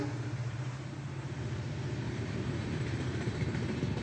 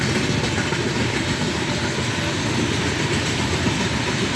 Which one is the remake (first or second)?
first